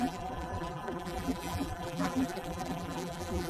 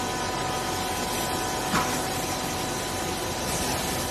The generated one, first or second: first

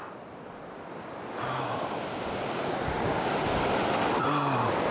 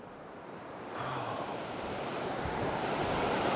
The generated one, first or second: second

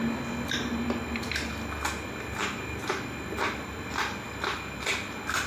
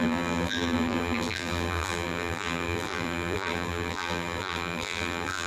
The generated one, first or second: second